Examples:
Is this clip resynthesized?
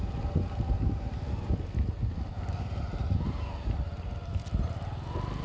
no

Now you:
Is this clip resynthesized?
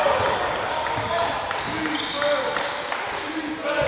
no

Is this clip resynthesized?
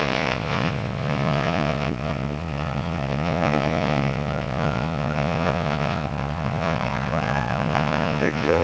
yes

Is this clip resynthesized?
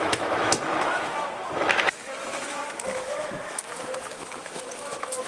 yes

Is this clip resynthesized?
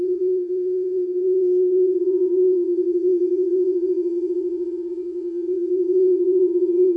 yes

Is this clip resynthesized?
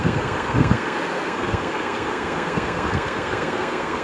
yes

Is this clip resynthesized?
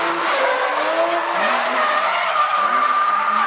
no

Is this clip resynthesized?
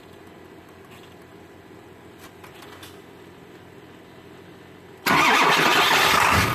no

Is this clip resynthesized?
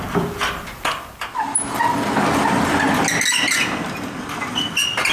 no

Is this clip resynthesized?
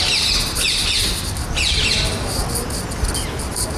no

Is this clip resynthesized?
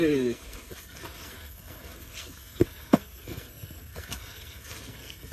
yes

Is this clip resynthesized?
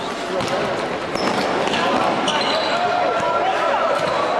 no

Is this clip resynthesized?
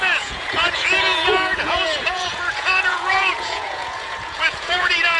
yes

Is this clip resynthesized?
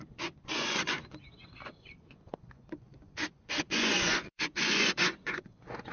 yes